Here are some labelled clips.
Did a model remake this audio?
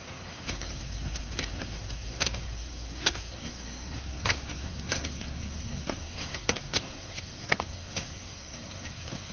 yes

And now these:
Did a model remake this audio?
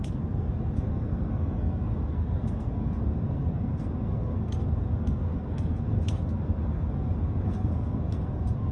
yes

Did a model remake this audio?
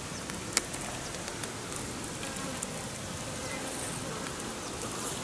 no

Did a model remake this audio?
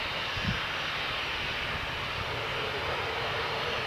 no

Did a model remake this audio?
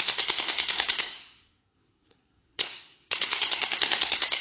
yes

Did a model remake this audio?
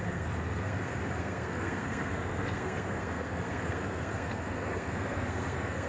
yes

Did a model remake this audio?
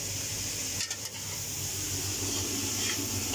no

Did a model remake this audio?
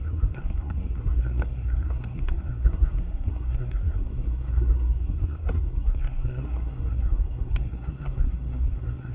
yes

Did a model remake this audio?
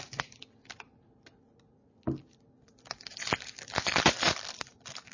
no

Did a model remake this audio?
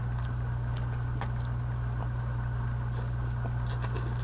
no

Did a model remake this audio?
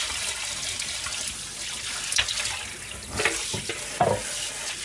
no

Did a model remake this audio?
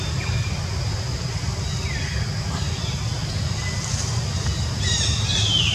no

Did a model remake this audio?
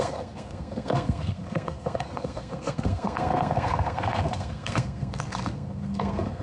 yes